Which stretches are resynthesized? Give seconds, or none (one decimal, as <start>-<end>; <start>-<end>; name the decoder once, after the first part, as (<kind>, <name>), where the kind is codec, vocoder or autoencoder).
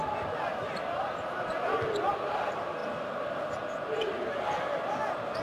none